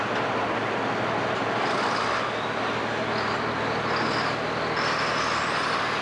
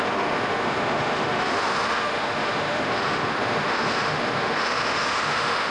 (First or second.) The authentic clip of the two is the first